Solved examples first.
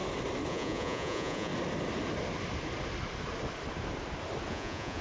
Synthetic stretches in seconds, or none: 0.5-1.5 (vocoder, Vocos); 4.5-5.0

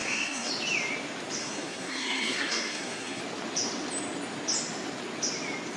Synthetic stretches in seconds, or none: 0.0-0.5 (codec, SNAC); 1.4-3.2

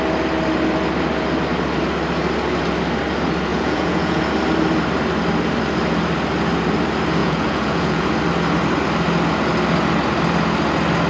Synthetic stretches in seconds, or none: 3.5-4.2 (vocoder, Vocos); 7.2-8.2